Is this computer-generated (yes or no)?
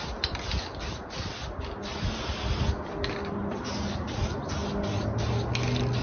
no